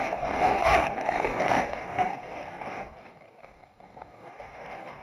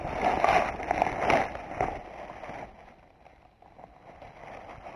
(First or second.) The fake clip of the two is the first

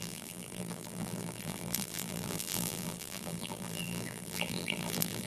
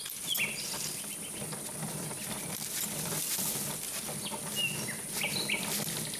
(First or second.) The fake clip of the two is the first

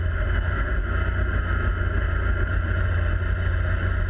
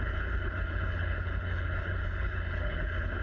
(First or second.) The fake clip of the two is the second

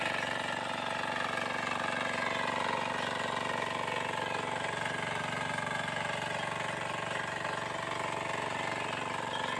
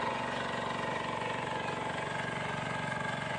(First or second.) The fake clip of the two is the second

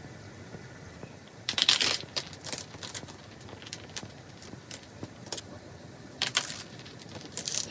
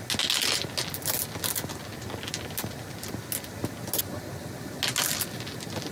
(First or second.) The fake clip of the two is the first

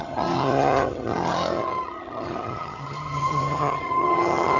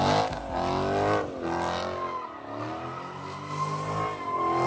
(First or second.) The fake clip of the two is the first